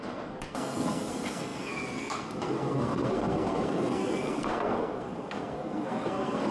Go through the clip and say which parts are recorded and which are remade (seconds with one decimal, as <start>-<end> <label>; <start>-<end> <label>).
0.0-6.5 remade